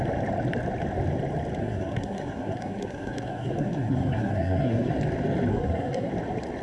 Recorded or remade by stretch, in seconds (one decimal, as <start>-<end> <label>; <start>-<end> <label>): 0.0-1.6 recorded; 1.6-4.9 remade; 4.9-5.5 recorded; 5.5-6.1 remade; 6.1-6.6 recorded